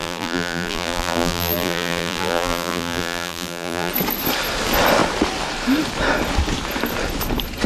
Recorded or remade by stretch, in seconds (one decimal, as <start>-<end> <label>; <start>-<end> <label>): 0.0-3.9 remade; 3.9-7.7 recorded